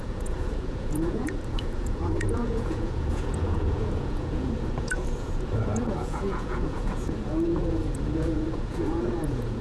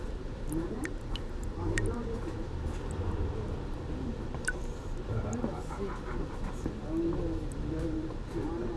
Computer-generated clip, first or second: first